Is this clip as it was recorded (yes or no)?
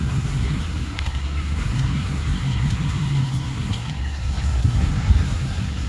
no